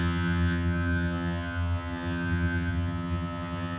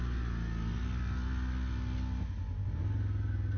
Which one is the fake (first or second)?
first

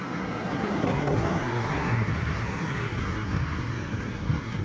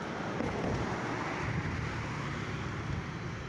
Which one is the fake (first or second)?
first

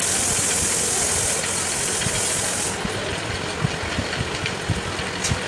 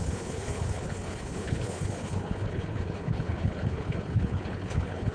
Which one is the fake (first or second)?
second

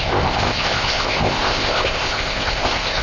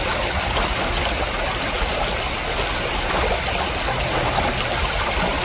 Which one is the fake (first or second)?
first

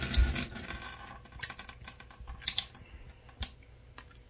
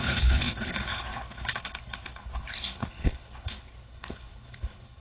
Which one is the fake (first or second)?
second